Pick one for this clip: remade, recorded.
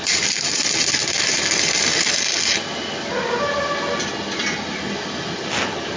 recorded